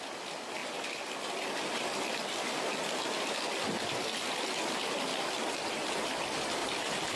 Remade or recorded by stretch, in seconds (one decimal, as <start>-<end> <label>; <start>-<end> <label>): 0.0-7.2 recorded